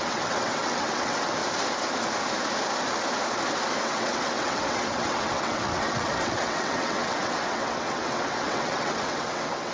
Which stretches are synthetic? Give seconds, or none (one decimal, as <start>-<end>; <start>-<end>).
0.0-1.4; 3.8-9.7